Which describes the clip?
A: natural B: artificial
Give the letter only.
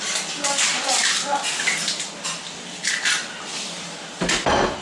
A